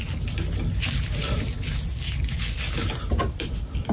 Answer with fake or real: real